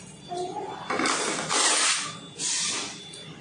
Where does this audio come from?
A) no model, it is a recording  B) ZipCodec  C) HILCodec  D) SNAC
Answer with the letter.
A